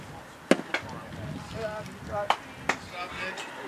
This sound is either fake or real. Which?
real